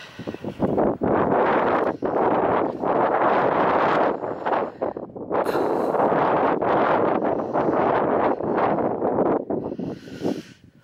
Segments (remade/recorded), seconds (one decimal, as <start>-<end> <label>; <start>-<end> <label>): 0.0-10.8 recorded